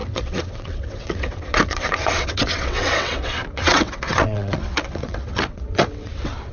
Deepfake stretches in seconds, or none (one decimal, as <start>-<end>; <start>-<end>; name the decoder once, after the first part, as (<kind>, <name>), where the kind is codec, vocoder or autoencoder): 0.0-6.5 (vocoder, WaveNeXt)